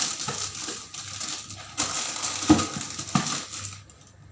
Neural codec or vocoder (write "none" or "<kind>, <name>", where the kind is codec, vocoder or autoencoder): none